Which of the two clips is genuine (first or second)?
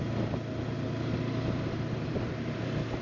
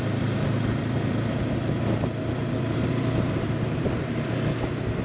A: first